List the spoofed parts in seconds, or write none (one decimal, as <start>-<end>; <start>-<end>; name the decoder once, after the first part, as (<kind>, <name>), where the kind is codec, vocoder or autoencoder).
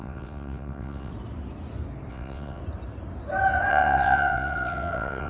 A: 0.0-1.1 (vocoder, WaveNeXt); 2.1-2.6; 3.7-5.3